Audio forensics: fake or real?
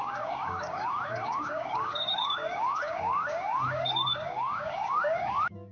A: fake